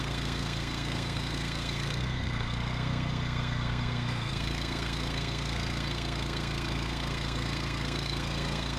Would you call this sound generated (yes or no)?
yes